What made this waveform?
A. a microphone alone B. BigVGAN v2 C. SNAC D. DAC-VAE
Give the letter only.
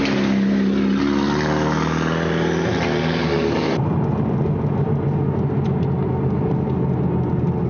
A